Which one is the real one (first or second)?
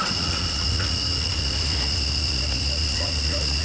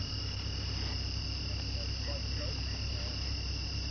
second